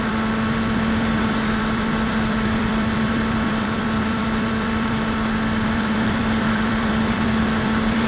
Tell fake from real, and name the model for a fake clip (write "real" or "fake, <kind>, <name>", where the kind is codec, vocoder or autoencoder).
fake, vocoder, BigVGAN v2